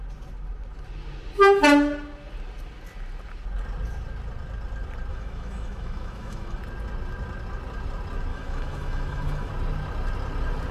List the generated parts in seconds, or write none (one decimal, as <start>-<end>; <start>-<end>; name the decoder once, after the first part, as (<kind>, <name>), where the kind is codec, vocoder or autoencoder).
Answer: 5.1-6.6 (autoencoder, DAC-VAE); 8.3-9.5